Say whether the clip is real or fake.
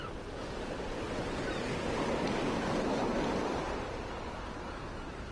real